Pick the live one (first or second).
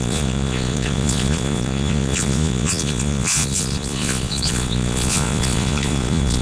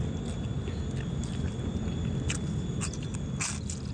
second